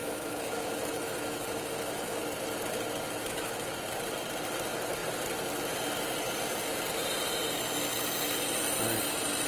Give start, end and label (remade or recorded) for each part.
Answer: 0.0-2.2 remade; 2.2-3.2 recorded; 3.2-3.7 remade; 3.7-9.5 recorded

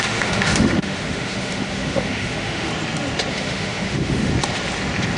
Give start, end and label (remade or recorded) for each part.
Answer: 0.0-2.7 remade; 2.7-3.3 recorded; 3.3-4.3 remade; 4.3-5.2 recorded